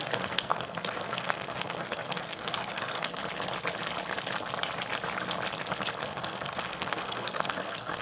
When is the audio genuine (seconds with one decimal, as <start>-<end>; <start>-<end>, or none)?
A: 3.2-6.0